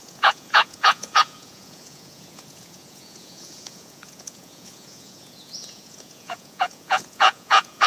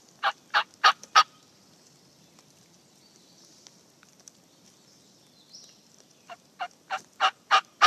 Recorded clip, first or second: second